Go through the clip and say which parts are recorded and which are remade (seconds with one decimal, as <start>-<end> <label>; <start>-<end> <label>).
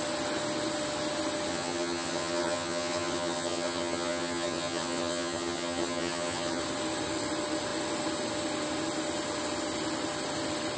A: 0.0-1.5 recorded; 1.5-6.6 remade; 6.6-10.8 recorded